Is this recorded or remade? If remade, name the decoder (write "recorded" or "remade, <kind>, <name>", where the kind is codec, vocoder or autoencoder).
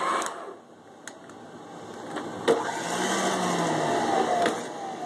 recorded